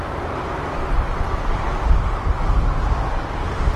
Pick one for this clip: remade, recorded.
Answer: remade